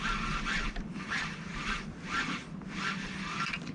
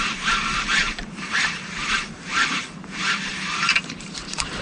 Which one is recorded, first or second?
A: first